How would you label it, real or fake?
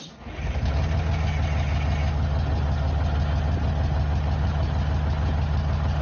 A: real